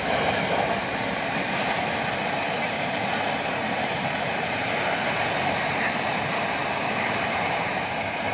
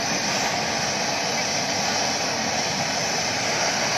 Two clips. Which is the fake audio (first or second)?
first